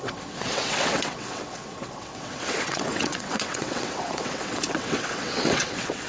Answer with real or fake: fake